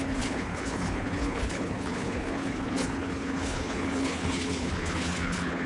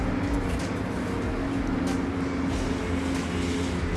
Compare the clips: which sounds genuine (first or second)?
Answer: second